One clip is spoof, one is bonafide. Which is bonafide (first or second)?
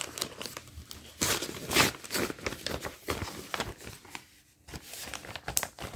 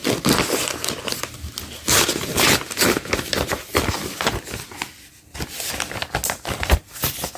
second